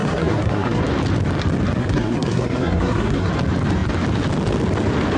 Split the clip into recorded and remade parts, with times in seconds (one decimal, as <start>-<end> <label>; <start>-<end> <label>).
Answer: 0.0-0.8 remade; 0.8-1.8 recorded; 1.8-3.3 remade; 3.3-5.2 recorded